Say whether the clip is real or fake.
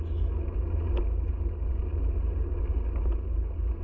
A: real